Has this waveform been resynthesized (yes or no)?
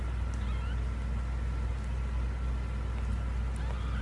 no